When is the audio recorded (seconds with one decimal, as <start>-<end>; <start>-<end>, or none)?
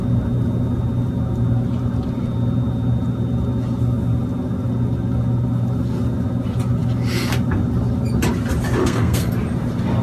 0.0-8.8; 9.3-10.0